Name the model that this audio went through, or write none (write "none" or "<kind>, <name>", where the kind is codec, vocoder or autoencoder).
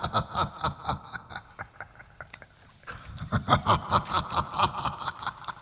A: none